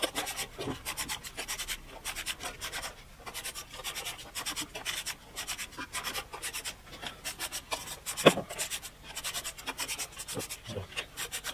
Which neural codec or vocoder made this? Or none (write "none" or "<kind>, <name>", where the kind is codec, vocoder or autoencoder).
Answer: none